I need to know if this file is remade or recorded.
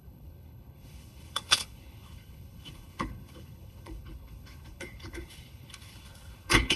remade